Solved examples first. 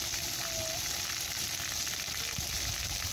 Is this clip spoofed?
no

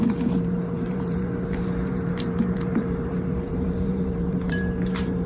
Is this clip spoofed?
yes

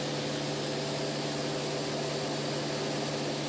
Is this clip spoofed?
no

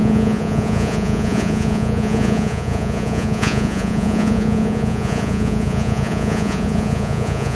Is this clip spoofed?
yes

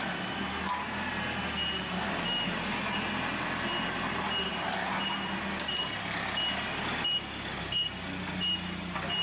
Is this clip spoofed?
no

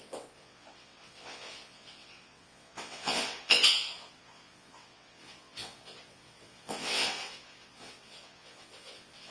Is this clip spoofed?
yes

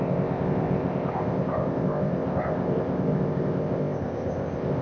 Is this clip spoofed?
yes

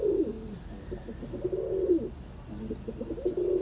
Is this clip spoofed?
no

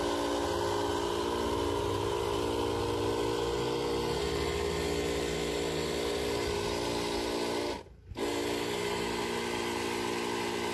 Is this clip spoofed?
no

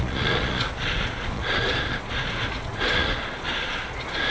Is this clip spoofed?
yes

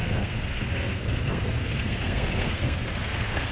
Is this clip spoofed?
yes